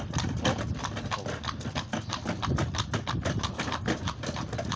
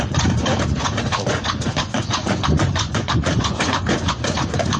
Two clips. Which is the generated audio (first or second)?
second